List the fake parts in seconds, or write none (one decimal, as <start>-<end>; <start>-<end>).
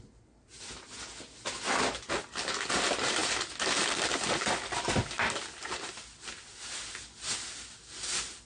0.5-1.0